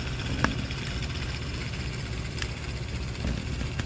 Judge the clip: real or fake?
real